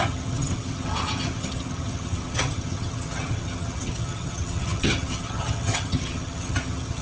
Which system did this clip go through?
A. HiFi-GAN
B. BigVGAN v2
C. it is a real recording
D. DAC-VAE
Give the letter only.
A